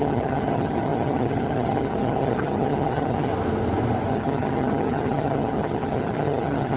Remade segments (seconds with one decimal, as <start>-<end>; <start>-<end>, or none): 0.0-3.3; 4.1-6.8